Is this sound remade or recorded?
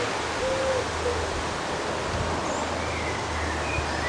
recorded